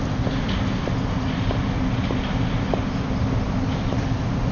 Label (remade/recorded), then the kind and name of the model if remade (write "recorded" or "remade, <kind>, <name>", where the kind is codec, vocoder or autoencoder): recorded